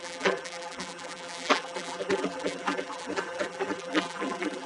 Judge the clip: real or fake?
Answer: fake